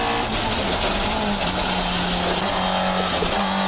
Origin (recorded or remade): recorded